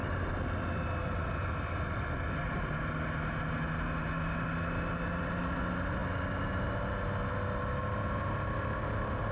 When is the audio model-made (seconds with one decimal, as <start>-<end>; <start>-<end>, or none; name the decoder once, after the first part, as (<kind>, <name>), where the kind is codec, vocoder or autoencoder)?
none